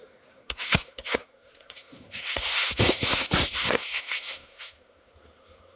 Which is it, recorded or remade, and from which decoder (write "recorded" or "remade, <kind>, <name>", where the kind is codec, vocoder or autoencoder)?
remade, codec, SNAC